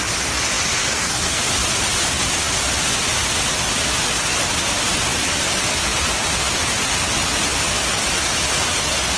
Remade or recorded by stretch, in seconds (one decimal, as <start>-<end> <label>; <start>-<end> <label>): 0.0-0.8 recorded; 0.8-1.4 remade; 1.4-9.2 recorded